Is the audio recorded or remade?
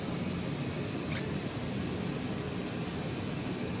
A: recorded